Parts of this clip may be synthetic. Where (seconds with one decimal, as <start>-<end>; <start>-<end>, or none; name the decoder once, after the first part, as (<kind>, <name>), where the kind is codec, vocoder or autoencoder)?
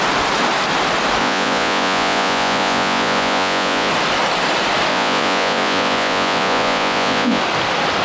1.2-3.9 (vocoder, Vocos); 4.9-7.4